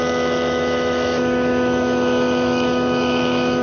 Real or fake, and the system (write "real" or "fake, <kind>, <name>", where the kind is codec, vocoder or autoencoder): fake, autoencoder, DAC-VAE